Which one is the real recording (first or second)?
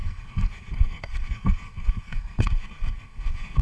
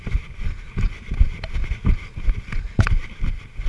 second